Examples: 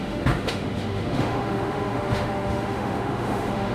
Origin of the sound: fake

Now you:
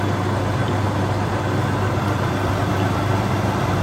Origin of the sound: fake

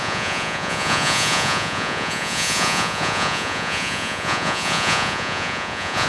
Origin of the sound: fake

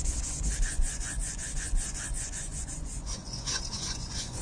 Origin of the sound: fake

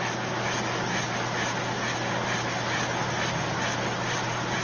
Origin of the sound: real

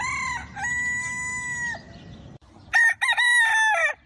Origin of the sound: real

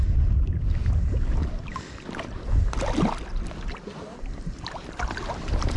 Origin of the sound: real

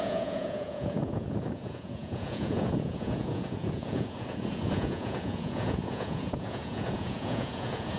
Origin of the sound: fake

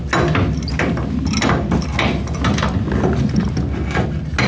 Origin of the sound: real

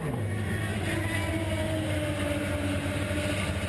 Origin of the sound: real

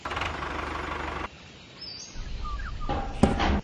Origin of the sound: real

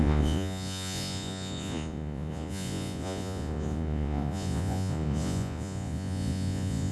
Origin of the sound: fake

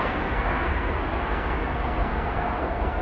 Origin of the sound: fake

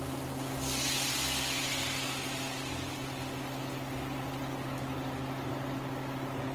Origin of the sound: real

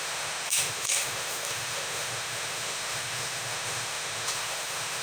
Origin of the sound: fake